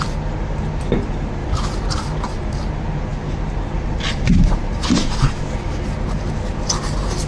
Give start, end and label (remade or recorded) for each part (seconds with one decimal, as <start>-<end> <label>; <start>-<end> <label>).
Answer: 0.0-7.3 recorded